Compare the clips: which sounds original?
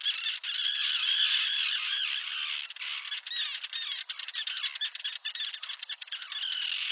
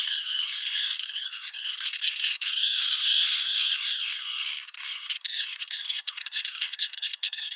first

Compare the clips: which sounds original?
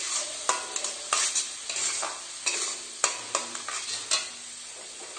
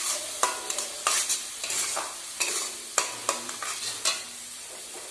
first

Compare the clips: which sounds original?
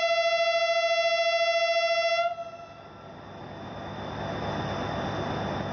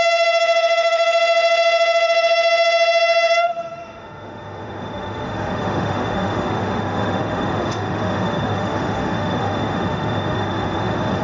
first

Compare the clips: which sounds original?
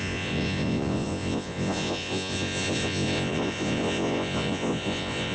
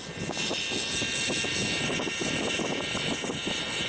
second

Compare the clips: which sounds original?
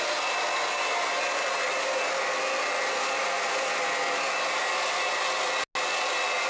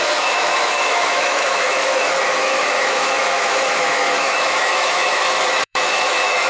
first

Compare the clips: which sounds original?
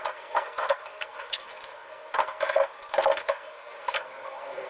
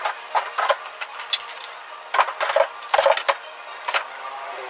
second